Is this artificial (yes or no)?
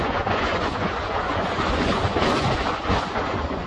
yes